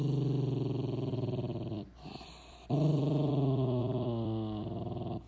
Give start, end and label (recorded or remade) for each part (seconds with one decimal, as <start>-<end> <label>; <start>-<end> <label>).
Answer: 0.0-1.1 recorded; 1.1-3.3 remade; 3.3-3.8 recorded; 3.8-5.3 remade